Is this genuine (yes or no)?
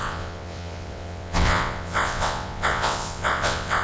no